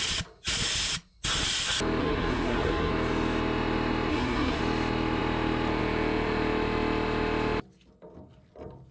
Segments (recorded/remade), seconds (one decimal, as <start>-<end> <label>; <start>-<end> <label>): 0.0-2.0 recorded; 2.0-2.9 remade; 2.9-4.1 recorded; 4.1-4.6 remade; 4.6-8.9 recorded